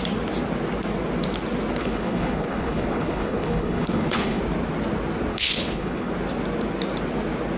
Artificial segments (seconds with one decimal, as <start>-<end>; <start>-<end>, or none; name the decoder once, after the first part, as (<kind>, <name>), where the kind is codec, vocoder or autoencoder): 1.8-4.4 (codec, HILCodec); 5.3-6.1